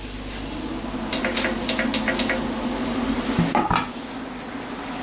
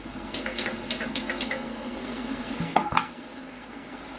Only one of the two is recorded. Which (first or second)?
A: first